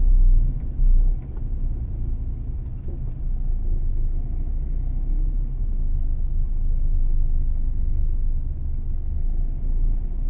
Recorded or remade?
recorded